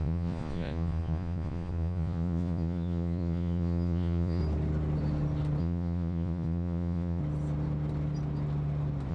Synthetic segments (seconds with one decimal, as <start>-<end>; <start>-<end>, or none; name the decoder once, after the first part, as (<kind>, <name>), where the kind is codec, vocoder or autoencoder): 0.0-4.4 (vocoder, Vocos); 5.6-7.2